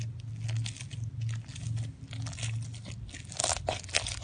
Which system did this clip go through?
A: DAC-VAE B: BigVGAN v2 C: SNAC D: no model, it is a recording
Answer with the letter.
D